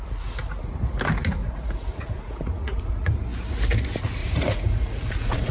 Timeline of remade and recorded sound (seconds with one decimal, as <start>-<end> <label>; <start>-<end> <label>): 0.0-1.4 recorded; 1.4-3.1 remade; 3.1-4.2 recorded; 4.2-5.5 remade